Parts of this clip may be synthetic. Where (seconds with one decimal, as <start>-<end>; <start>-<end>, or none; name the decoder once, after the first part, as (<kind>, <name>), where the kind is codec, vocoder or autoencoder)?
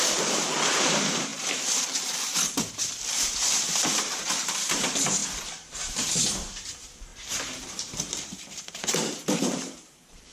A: 0.0-10.3 (vocoder, BigVGAN v2)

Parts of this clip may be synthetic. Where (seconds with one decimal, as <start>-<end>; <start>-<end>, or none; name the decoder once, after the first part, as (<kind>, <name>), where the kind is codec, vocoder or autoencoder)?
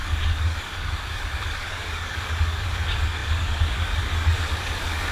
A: 0.0-5.1 (codec, DAC)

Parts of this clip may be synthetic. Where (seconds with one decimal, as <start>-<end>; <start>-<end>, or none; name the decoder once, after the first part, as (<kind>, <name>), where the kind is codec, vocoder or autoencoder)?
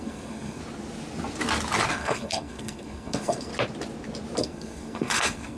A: 0.0-0.6 (codec, SNAC); 1.9-3.5; 4.4-5.6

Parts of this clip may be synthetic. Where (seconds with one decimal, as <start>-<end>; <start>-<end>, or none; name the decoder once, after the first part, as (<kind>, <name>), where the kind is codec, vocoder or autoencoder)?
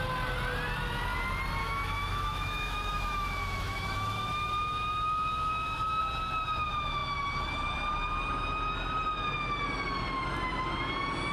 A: 1.6-6.0 (autoencoder, DAC-VAE)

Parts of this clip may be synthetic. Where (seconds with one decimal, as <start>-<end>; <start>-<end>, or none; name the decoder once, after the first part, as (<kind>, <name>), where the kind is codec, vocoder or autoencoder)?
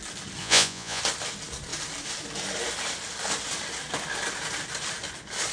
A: 0.4-1.0 (vocoder, Vocos)